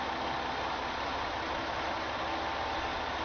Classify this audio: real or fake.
real